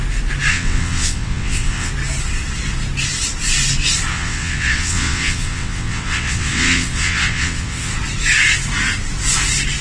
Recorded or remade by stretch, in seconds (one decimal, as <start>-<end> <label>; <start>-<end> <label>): 0.0-0.5 recorded; 0.5-1.9 remade; 1.9-4.1 recorded; 4.1-7.9 remade; 7.9-9.8 recorded

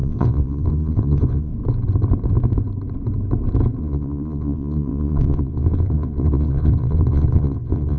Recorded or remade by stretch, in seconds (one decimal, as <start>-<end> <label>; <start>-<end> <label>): 0.0-1.5 remade; 1.5-3.8 recorded; 3.8-8.0 remade

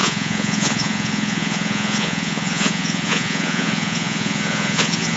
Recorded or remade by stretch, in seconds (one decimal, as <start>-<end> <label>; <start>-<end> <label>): 0.0-5.2 remade

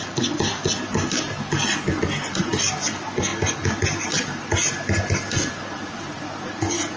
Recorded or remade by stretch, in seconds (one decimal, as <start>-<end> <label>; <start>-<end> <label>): 0.0-7.0 recorded

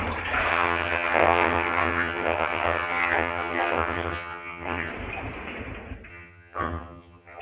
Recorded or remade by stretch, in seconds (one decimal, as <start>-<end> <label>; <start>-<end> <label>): 0.0-0.5 recorded; 0.5-4.9 remade; 4.9-6.1 recorded; 6.1-7.4 remade

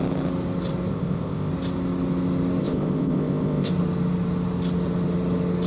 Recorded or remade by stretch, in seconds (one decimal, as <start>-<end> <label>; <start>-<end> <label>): 0.0-0.9 recorded; 0.9-1.5 remade; 1.5-2.6 recorded; 2.6-3.7 remade; 3.7-5.7 recorded

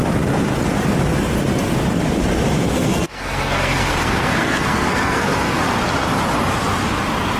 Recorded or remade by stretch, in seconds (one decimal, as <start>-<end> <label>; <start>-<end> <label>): 0.0-2.7 recorded; 2.7-5.6 remade; 5.6-7.4 recorded

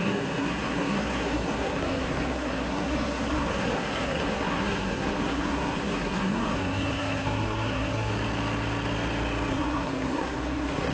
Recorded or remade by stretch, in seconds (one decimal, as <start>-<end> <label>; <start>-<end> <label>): 0.0-8.1 remade; 8.1-9.5 recorded; 9.5-10.9 remade